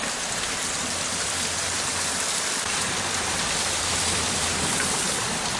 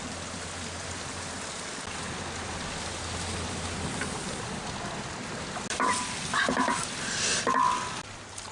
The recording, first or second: second